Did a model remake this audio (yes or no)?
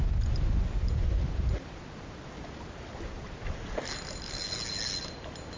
no